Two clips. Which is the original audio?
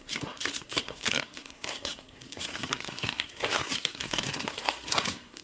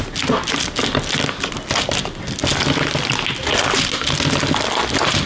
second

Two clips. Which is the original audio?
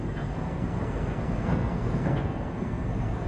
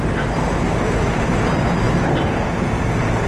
second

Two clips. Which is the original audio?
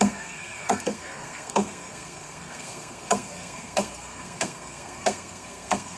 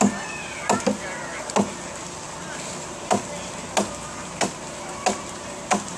second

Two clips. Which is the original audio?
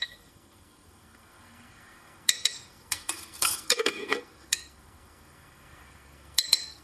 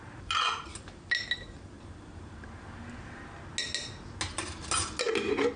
second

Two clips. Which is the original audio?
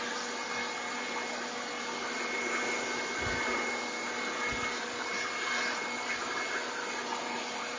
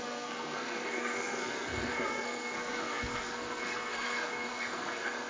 first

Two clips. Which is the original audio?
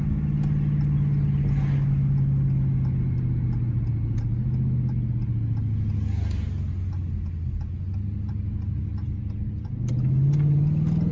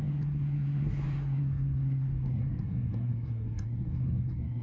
first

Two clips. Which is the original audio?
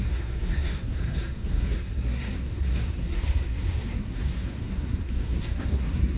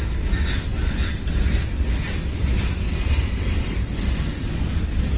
second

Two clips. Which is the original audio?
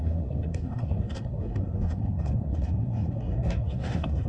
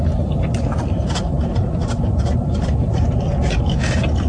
second